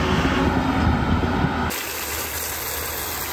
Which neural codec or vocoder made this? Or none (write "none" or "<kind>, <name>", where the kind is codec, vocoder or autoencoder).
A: none